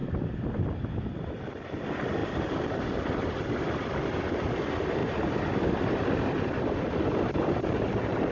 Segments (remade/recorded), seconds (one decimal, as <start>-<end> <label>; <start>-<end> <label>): 0.0-8.3 recorded